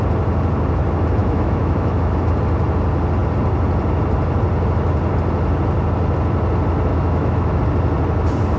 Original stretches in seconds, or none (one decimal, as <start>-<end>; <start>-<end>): 0.0-1.2; 2.3-6.9; 7.6-8.6